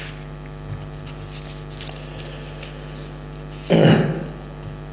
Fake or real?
real